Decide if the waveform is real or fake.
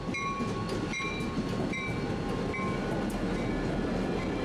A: real